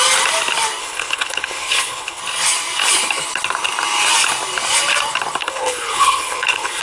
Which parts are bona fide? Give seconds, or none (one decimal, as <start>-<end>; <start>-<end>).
0.0-0.8; 2.2-5.4